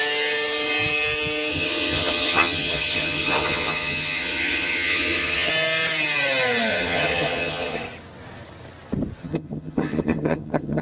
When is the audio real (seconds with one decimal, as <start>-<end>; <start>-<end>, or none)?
0.0-1.5; 5.5-6.7; 7.8-9.2